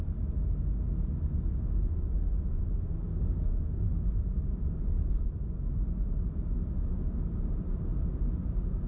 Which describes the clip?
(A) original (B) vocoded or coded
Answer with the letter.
A